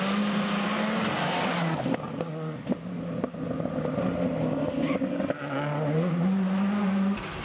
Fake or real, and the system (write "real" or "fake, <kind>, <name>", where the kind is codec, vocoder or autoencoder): real